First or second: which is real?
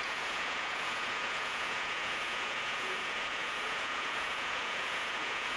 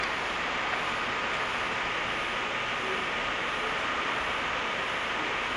second